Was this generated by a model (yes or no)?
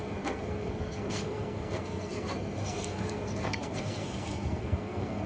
yes